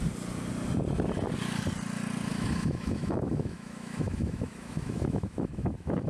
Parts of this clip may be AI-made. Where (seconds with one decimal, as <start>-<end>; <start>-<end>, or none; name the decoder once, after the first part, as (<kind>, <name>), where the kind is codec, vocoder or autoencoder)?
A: 2.3-6.1 (autoencoder, DAC-VAE)